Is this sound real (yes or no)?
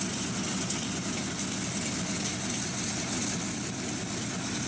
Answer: yes